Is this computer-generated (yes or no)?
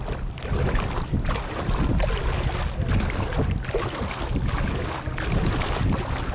no